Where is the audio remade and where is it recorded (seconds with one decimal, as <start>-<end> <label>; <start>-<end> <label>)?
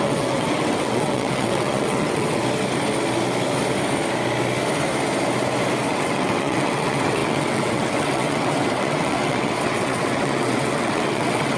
0.0-2.4 remade; 2.4-5.9 recorded; 5.9-11.6 remade